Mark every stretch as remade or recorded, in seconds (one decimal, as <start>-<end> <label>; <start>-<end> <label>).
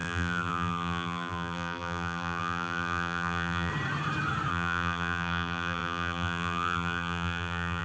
0.0-3.7 remade; 3.7-4.5 recorded; 4.5-7.8 remade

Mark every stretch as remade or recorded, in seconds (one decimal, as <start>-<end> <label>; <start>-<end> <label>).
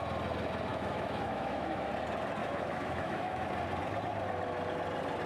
0.0-0.7 recorded; 0.7-1.9 remade; 1.9-2.4 recorded; 2.4-3.5 remade; 3.5-5.3 recorded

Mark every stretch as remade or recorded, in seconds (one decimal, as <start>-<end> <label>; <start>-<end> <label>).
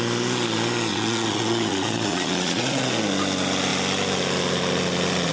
0.0-0.9 recorded; 0.9-2.9 remade; 2.9-5.3 recorded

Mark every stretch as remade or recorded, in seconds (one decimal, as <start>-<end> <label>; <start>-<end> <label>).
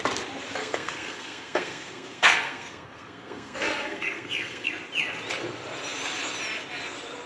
0.0-0.6 recorded; 0.6-4.7 remade; 4.7-7.3 recorded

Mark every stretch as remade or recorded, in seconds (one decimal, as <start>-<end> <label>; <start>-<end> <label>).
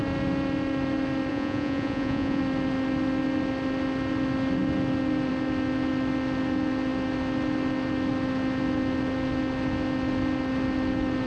0.0-1.3 recorded; 1.3-2.4 remade; 2.4-11.3 recorded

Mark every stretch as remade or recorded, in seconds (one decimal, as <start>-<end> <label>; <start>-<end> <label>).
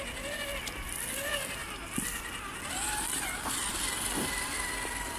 0.0-5.2 recorded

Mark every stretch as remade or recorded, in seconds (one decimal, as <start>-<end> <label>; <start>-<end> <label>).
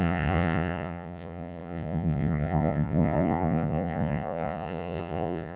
0.0-5.6 remade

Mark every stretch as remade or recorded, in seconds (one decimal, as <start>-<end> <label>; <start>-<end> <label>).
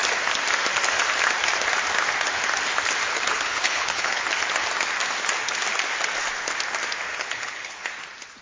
0.0-3.1 recorded; 3.1-4.2 remade; 4.2-7.1 recorded; 7.1-7.9 remade; 7.9-8.4 recorded